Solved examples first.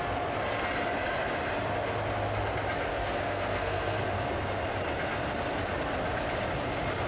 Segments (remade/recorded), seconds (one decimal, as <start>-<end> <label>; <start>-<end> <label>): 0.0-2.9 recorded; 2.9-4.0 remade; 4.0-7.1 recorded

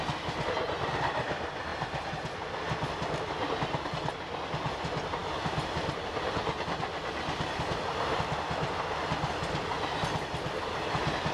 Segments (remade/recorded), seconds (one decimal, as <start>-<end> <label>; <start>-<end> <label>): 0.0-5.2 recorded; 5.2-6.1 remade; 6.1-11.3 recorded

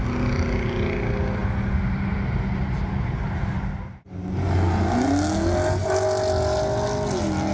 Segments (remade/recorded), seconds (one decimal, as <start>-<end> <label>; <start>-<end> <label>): 0.0-7.5 recorded

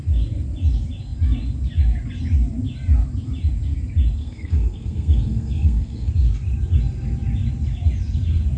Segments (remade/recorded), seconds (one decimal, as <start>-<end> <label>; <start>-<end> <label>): 0.0-4.2 recorded; 4.2-6.1 remade; 6.1-8.6 recorded

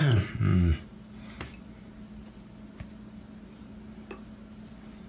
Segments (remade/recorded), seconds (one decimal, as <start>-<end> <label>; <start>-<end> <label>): 0.0-5.1 recorded

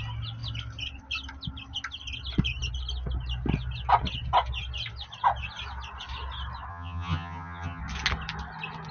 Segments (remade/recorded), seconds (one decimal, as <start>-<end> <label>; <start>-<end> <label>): 0.0-6.7 recorded; 6.7-7.8 remade; 7.8-8.9 recorded